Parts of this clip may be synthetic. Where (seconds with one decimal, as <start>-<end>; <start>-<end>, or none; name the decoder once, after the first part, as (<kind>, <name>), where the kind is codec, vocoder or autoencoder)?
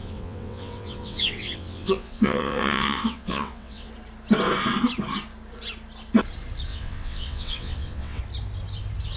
0.0-3.9 (vocoder, WaveNeXt); 6.7-8.2